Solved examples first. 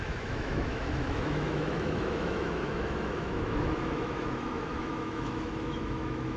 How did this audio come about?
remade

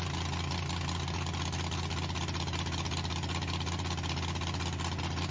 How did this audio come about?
recorded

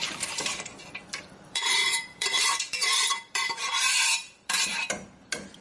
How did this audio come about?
remade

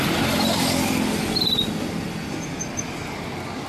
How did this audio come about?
recorded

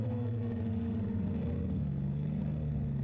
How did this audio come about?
remade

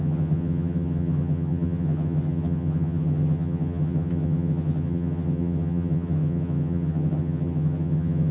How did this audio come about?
remade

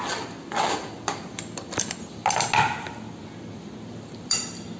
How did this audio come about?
recorded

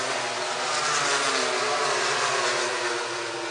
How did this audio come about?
recorded